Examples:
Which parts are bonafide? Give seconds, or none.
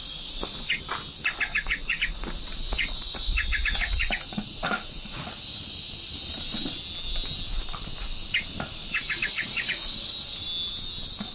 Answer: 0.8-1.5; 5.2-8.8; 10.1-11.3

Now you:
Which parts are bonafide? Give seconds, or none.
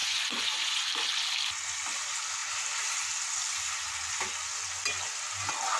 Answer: 0.8-5.8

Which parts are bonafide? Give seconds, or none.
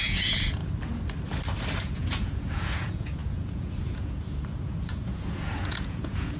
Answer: 0.6-1.8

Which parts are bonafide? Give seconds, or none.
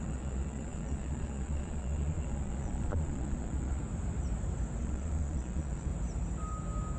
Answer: 3.8-4.8; 5.9-7.0